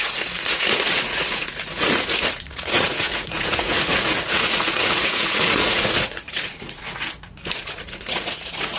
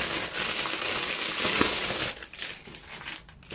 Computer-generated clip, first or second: first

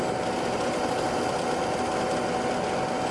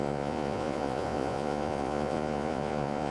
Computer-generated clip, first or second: second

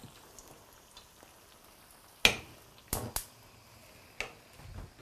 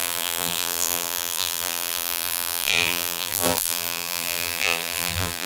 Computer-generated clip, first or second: second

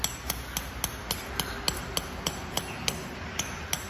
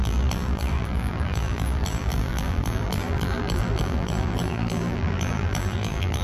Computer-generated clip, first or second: second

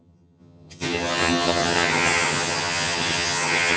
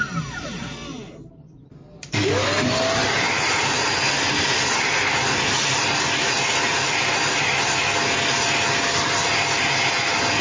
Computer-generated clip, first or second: first